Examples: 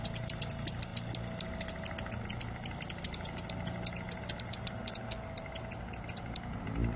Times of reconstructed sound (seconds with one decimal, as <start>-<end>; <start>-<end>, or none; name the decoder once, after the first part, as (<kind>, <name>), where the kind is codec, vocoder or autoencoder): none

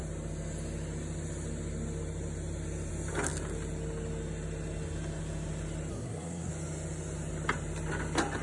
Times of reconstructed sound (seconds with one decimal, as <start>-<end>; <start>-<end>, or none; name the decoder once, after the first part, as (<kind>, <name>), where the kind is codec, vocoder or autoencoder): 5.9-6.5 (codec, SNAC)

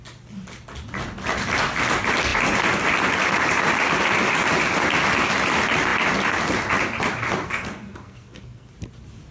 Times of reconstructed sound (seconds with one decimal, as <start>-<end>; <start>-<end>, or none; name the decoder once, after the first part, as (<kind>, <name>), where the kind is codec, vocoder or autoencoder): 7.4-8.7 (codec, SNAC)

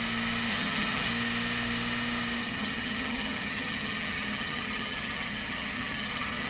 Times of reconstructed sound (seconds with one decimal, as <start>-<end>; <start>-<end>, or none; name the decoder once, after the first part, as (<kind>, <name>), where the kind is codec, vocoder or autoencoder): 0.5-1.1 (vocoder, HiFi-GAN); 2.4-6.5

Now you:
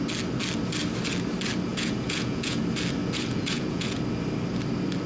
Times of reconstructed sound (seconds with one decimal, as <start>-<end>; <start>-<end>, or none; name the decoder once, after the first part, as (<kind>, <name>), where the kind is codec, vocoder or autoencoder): 1.7-2.6 (vocoder, Vocos); 3.0-4.0

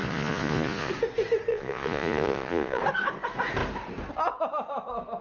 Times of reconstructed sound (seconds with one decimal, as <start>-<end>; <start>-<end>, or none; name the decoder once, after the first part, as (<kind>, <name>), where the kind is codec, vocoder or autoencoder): 0.0-0.9 (vocoder, Vocos); 1.5-2.8